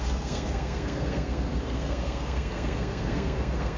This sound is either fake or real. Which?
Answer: fake